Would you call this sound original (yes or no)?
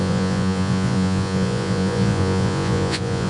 no